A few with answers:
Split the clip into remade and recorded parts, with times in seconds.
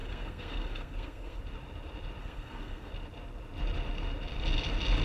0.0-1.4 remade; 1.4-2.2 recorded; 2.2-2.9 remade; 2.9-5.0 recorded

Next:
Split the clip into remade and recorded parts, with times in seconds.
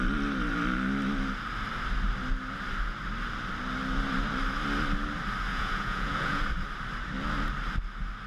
0.0-5.5 recorded; 5.5-6.4 remade; 6.4-8.3 recorded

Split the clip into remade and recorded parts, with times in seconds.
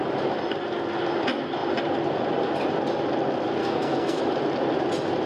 0.0-3.6 recorded; 3.6-4.2 remade; 4.2-5.3 recorded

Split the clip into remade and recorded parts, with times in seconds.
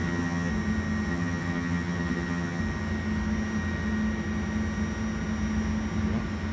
0.0-0.5 remade; 0.5-1.1 recorded; 1.1-2.6 remade; 2.6-6.5 recorded